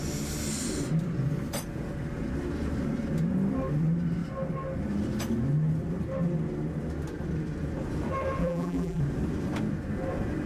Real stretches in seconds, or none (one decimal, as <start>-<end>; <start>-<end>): 0.0-8.4; 9.0-10.5